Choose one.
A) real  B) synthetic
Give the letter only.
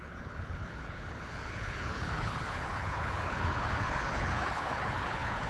B